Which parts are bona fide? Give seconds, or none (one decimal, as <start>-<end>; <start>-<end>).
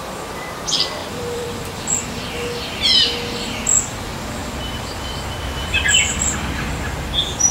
0.0-1.0; 1.8-4.4; 4.9-7.5